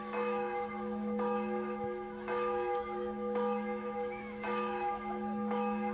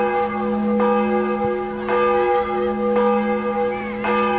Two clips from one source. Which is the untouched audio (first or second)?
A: second